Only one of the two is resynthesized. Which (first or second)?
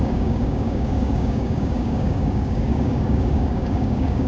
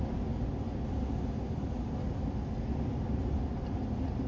first